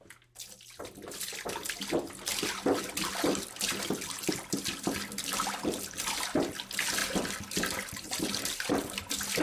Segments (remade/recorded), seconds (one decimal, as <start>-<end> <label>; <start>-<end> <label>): 0.0-9.4 recorded